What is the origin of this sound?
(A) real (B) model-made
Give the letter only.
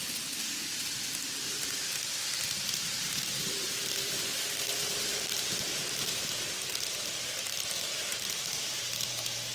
B